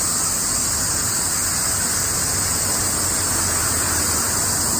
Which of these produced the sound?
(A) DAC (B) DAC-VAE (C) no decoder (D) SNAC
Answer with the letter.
C